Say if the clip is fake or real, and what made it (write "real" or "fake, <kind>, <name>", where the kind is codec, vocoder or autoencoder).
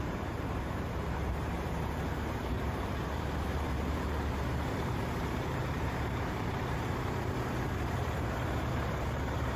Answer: fake, vocoder, BigVGAN v2